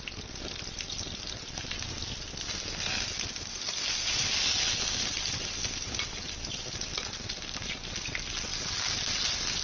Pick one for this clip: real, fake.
real